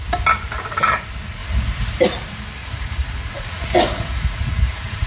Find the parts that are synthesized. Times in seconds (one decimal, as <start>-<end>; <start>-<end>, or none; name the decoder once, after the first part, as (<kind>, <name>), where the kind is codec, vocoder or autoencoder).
2.6-5.1 (vocoder, Vocos)